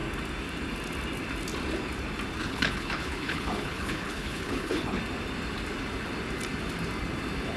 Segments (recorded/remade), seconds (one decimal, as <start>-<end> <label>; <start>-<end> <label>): 0.0-2.4 recorded; 2.4-5.0 remade; 5.0-7.6 recorded